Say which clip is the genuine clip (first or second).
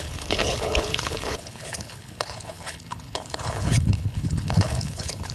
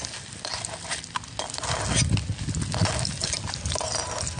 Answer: second